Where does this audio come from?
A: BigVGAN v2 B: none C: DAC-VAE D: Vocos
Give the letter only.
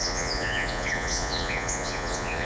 D